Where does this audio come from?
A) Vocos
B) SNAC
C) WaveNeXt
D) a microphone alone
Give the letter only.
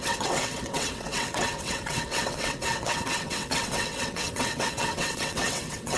C